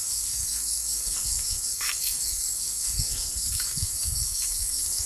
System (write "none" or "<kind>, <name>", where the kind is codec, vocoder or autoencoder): codec, SNAC